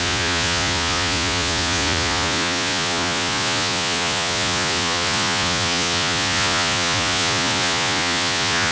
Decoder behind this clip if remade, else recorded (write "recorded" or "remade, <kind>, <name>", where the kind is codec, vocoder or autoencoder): remade, vocoder, Vocos